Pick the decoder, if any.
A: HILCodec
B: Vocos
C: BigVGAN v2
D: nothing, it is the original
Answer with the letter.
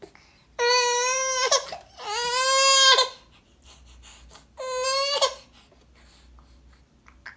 D